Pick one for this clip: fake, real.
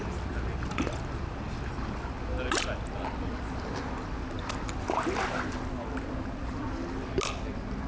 real